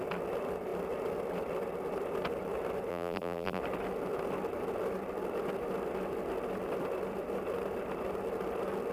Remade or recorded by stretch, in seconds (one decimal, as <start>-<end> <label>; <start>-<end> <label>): 0.0-2.9 recorded; 2.9-3.6 remade; 3.6-8.9 recorded